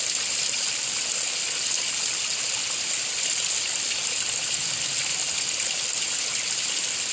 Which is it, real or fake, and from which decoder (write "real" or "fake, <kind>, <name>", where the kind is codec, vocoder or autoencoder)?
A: real